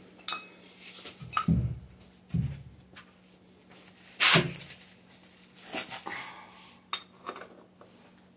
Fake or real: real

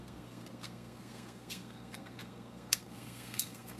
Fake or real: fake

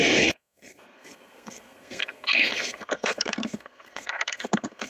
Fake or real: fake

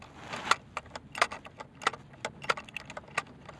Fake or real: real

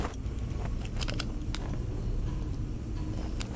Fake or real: real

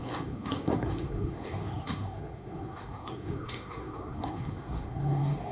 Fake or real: fake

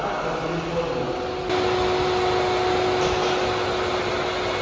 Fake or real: real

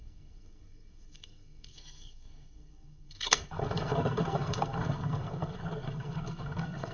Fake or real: fake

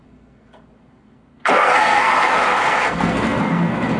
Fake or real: fake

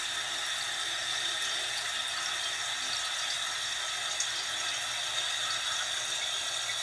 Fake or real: real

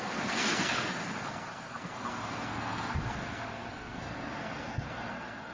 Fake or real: fake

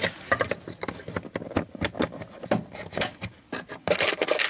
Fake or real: real